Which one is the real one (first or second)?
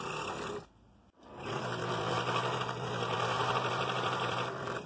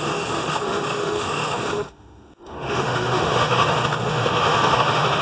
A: first